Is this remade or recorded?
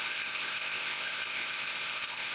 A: remade